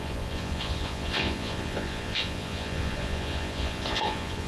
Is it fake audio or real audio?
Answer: fake